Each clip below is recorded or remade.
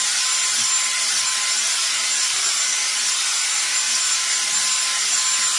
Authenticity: recorded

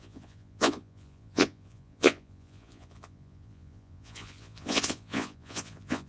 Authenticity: remade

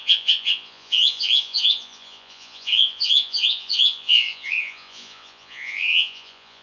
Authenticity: remade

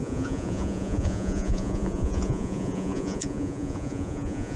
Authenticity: remade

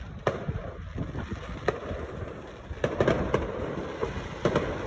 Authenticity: recorded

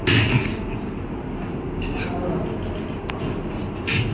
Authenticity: recorded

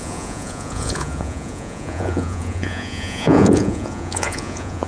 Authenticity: remade